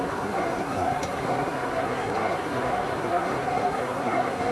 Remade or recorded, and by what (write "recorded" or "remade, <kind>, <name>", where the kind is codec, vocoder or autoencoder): remade, codec, SNAC